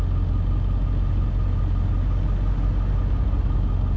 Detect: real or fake real